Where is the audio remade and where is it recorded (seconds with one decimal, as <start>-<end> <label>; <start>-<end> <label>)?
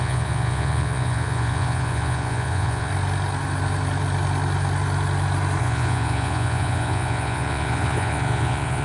0.0-2.9 remade; 2.9-5.6 recorded; 5.6-8.8 remade